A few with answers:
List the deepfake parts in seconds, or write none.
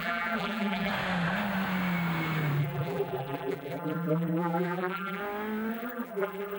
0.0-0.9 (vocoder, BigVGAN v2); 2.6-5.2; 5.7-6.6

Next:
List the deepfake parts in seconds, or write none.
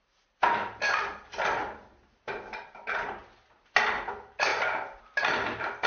0.0-3.2 (vocoder, BigVGAN v2); 4.1-5.9